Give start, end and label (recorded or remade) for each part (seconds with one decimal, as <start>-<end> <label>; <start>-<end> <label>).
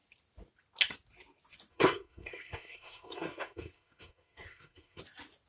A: 0.0-1.7 recorded; 1.7-5.0 remade; 5.0-5.5 recorded